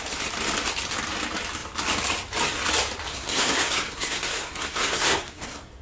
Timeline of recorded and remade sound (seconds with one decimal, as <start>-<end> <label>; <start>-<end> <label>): 0.0-3.1 recorded; 3.1-5.8 remade